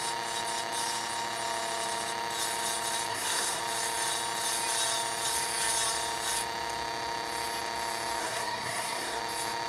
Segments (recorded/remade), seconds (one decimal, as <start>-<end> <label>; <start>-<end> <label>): 0.0-3.1 recorded; 3.1-3.6 remade; 3.6-8.2 recorded; 8.2-9.2 remade; 9.2-9.7 recorded